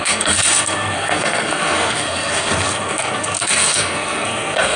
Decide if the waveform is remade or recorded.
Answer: remade